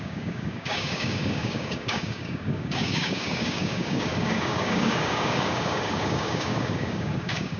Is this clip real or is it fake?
fake